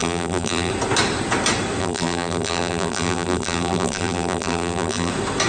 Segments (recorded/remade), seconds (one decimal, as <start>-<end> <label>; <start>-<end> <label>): 0.0-0.7 remade; 0.7-1.8 recorded; 1.8-5.1 remade; 5.1-5.5 recorded